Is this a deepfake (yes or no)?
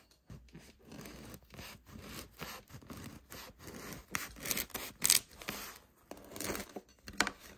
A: no